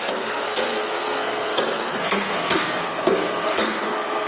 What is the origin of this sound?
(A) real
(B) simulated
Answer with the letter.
B